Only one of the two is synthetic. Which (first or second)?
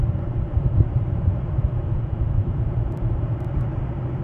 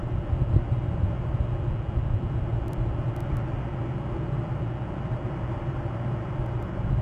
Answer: first